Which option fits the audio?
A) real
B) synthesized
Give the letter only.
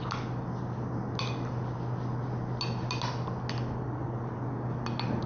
A